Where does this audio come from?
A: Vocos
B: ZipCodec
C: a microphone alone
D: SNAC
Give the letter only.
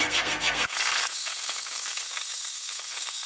D